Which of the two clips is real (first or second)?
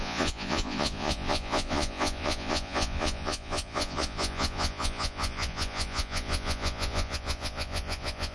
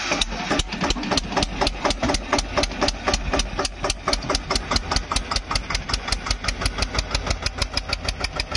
second